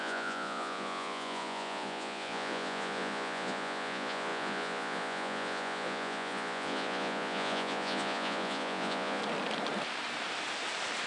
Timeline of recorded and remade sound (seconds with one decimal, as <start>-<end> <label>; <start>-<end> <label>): 0.0-9.2 remade; 9.2-11.1 recorded